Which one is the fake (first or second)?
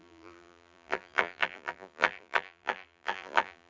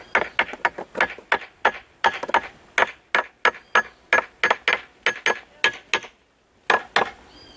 first